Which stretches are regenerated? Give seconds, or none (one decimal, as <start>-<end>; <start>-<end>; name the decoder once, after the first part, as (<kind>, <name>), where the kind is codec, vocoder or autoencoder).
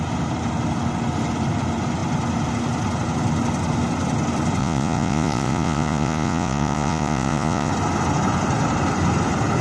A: 4.6-7.7 (vocoder, Vocos)